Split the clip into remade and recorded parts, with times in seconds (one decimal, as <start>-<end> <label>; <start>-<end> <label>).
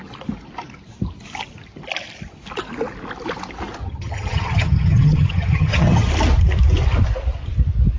0.0-3.8 recorded; 3.8-6.1 remade; 6.1-8.0 recorded